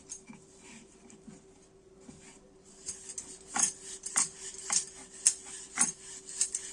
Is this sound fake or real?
real